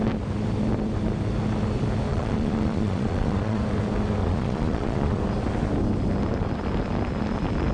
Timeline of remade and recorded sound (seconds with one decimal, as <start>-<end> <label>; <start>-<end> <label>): 0.0-2.1 recorded; 2.1-3.6 remade; 3.6-4.2 recorded; 4.2-5.2 remade; 5.2-7.7 recorded